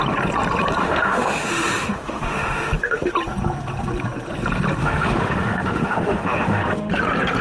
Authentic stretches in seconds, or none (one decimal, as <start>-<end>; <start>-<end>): 0.0-0.8; 3.1-4.8; 6.9-7.4